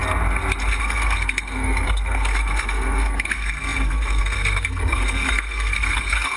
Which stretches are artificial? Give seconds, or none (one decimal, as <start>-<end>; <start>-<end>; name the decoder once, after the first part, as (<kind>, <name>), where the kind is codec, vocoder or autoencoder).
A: 0.8-6.4 (codec, SNAC)